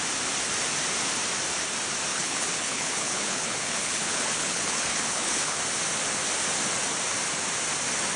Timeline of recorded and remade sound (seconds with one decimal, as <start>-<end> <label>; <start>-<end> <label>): 0.0-2.1 recorded; 2.1-5.6 remade; 5.6-8.2 recorded